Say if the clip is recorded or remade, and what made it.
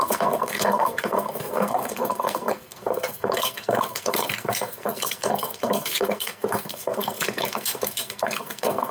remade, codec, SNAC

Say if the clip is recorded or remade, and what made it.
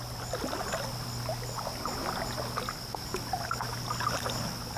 recorded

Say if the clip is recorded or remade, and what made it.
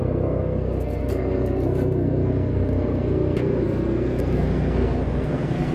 remade, codec, SNAC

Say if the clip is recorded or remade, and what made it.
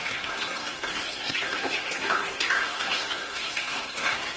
remade, codec, SNAC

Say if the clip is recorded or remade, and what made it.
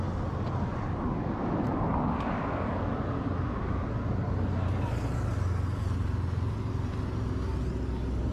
recorded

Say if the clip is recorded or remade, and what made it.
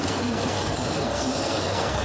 remade, codec, SNAC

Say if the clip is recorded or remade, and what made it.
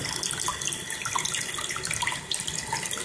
recorded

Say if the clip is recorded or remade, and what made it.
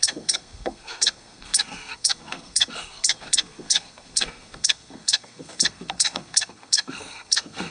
remade, codec, SNAC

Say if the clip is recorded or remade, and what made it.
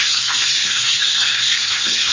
remade, codec, SNAC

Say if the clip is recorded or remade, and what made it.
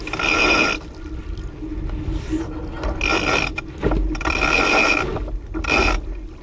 recorded